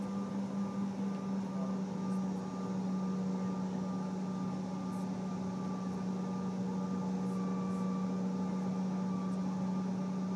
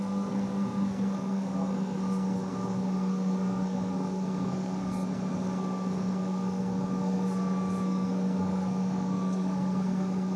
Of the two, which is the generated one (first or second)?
second